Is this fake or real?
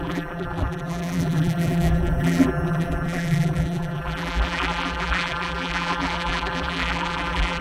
fake